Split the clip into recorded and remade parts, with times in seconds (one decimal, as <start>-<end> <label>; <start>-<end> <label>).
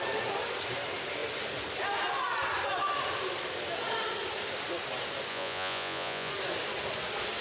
0.0-5.3 recorded; 5.3-6.3 remade; 6.3-7.4 recorded